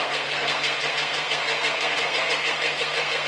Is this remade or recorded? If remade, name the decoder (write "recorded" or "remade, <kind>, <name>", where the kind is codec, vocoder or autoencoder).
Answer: remade, codec, SNAC